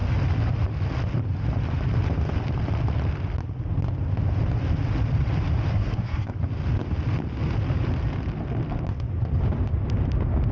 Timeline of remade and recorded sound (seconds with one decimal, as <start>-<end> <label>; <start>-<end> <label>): 0.0-5.7 recorded; 5.7-6.3 remade; 6.3-10.5 recorded